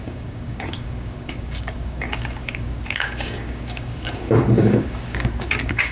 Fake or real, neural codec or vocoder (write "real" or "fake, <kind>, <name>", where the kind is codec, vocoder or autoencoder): fake, codec, DAC